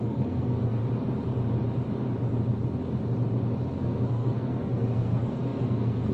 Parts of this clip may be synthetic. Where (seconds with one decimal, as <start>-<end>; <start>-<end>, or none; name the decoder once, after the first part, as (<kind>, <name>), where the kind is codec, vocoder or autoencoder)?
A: 0.0-0.8 (codec, SNAC); 3.8-6.1